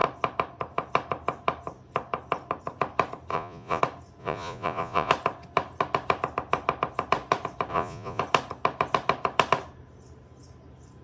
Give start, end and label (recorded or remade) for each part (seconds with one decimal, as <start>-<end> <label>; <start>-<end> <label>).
0.0-3.3 recorded; 3.3-3.8 remade; 3.8-4.2 recorded; 4.2-5.1 remade; 5.1-7.7 recorded; 7.7-8.2 remade; 8.2-11.0 recorded